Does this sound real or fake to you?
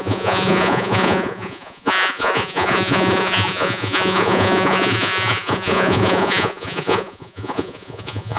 fake